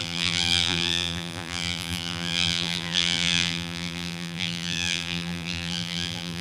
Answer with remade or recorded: remade